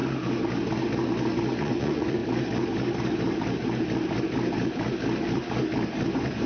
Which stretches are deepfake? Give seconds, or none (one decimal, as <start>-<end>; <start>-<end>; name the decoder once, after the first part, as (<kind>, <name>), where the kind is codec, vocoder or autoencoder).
1.6-2.2 (vocoder, Vocos); 6.1-6.5